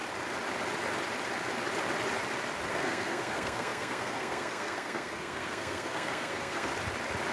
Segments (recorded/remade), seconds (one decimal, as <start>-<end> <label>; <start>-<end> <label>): 0.0-2.7 recorded; 2.7-6.7 remade; 6.7-7.3 recorded